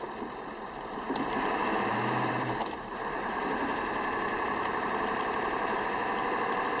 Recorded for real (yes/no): no